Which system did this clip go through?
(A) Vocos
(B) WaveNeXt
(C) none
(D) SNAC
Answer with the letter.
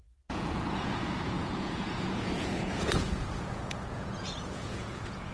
A